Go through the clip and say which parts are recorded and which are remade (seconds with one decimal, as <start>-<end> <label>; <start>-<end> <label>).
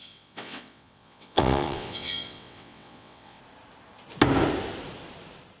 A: 0.0-3.4 remade; 3.4-5.6 recorded